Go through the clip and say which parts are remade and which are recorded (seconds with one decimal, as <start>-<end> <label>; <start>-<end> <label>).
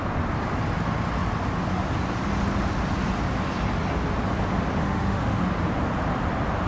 0.0-4.8 recorded; 4.8-5.5 remade; 5.5-6.7 recorded